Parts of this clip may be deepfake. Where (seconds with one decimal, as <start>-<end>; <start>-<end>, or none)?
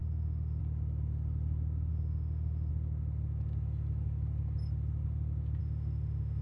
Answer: 0.0-0.6; 1.9-2.7; 5.6-6.4